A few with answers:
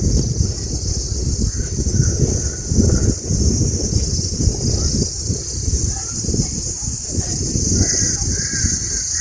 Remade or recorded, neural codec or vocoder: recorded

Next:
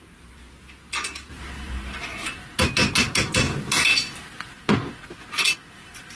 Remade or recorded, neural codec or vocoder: recorded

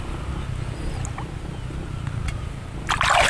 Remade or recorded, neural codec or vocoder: recorded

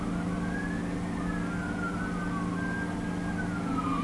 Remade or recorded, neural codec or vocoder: recorded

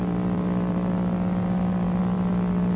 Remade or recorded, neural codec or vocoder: recorded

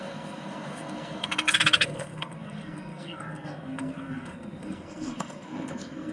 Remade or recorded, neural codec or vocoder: remade, codec, SNAC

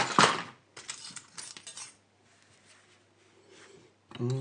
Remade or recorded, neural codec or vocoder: recorded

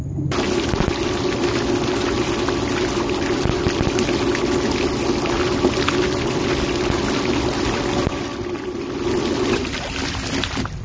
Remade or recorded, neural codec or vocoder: recorded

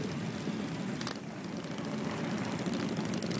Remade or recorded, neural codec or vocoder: recorded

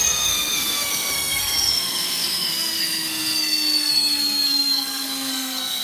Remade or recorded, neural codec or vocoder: remade, codec, SNAC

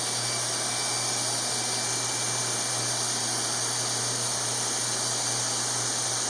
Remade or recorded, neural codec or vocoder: recorded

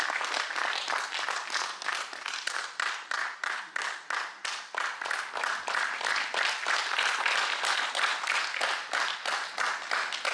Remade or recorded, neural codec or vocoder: recorded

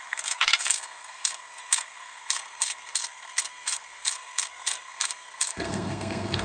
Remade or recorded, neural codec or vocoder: remade, codec, SNAC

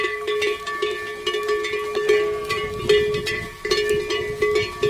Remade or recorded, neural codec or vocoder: recorded